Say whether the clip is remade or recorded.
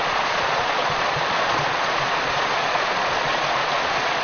remade